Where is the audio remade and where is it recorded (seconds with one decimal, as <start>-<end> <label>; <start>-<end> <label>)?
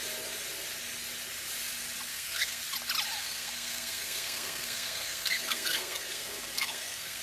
0.0-2.1 recorded; 2.1-2.6 remade; 2.6-3.2 recorded; 3.2-7.2 remade